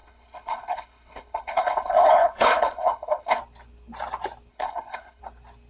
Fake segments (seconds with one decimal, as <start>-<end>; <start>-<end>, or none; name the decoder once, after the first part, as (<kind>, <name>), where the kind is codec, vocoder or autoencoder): 0.0-3.4 (codec, HILCodec); 4.5-5.2